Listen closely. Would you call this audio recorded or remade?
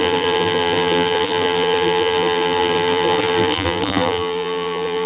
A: remade